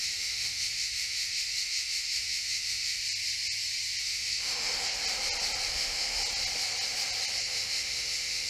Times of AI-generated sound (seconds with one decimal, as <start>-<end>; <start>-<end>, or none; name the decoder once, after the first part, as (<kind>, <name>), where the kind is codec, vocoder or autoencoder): 0.0-3.0 (autoencoder, DAC-VAE); 4.0-5.0; 5.7-6.2; 7.4-8.5